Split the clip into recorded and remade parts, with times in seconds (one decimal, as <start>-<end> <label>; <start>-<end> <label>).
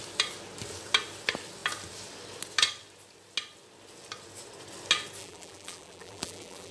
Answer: 0.0-5.2 recorded; 5.2-6.7 remade